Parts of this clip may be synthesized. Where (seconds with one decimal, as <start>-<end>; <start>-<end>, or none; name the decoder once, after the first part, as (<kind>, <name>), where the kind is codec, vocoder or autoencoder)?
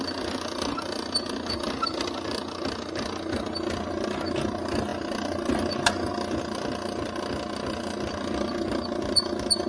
none